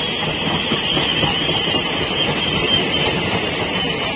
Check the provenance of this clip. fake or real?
real